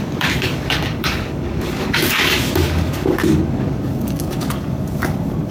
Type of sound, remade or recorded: remade